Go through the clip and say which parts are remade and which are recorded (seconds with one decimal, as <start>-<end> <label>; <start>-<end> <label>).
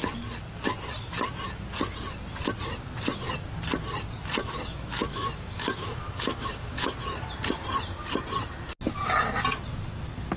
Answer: 0.0-4.4 recorded; 4.4-6.9 remade; 6.9-10.4 recorded